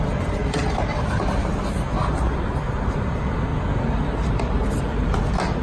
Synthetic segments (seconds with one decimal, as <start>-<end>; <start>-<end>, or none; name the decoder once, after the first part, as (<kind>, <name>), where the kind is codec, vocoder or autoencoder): 0.0-3.5 (vocoder, BigVGAN v2); 4.4-5.6